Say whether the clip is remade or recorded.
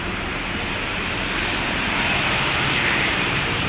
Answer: remade